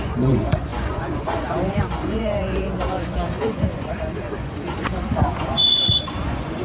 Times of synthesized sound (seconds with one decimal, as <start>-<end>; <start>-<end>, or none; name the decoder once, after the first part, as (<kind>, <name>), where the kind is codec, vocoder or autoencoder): 0.0-6.6 (vocoder, Vocos)